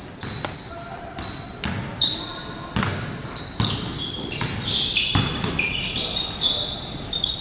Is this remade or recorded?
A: recorded